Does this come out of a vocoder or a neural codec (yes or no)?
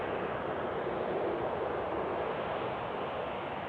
no